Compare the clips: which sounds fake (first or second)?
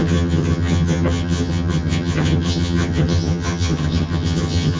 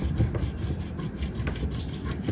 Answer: first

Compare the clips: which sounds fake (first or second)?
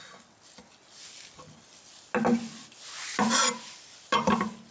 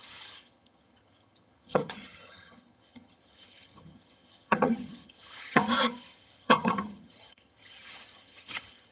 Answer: second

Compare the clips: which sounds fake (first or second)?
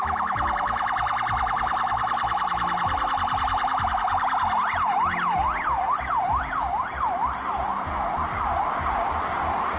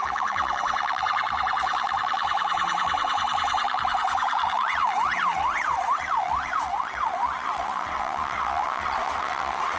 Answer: second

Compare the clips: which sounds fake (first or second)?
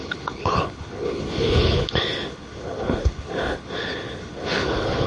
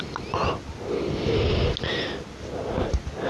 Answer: first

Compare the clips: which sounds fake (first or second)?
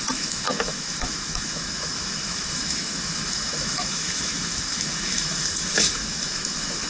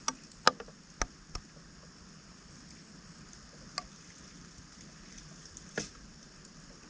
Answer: first